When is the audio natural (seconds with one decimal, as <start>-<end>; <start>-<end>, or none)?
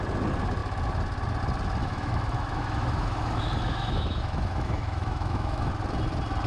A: 0.0-1.8; 5.7-6.5